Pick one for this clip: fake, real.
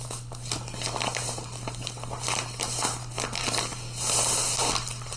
real